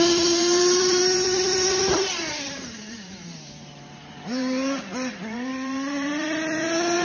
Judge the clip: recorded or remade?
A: remade